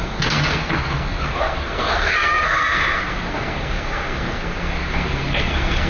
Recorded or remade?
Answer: remade